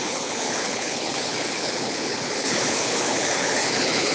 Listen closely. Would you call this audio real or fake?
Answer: fake